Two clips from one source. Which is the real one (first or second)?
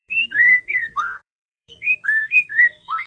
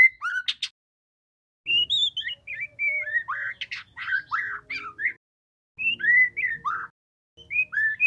second